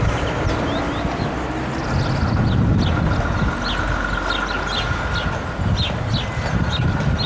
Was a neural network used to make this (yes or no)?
no